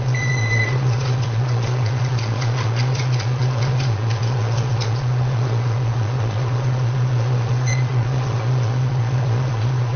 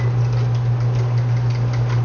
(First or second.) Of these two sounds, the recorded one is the second